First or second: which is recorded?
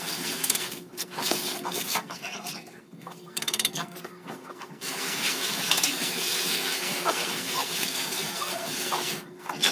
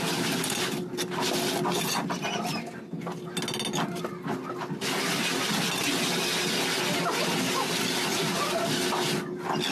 second